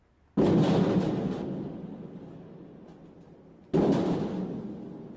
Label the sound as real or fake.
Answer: real